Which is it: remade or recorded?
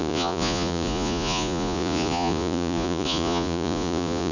remade